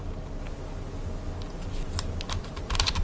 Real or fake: real